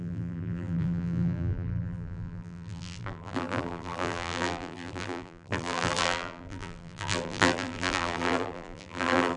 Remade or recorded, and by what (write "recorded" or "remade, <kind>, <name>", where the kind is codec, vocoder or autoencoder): remade, vocoder, BigVGAN v2